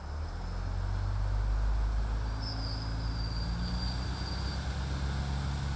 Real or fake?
real